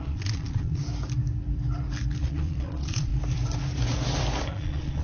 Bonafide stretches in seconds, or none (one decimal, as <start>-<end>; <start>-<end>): 0.8-2.2; 3.1-4.5